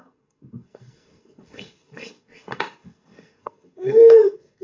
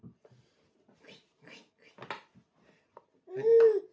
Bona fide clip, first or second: second